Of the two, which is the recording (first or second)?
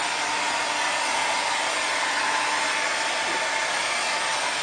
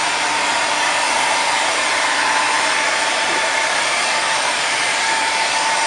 first